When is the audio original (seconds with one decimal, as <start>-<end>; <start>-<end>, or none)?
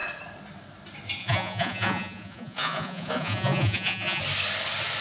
0.0-1.2; 4.2-5.0